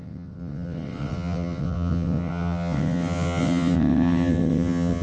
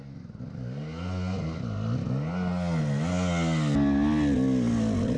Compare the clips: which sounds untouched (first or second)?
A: second